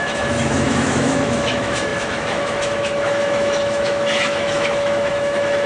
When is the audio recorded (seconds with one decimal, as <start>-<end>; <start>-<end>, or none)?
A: none